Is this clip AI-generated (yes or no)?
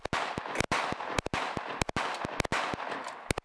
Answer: no